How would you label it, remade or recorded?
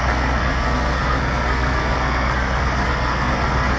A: remade